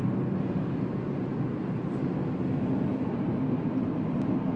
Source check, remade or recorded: recorded